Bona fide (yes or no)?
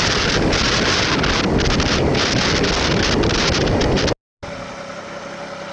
yes